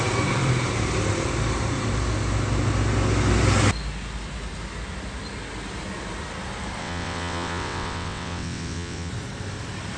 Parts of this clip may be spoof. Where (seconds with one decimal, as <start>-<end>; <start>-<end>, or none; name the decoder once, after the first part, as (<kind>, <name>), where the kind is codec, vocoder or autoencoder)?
6.8-9.1 (vocoder, WaveNeXt)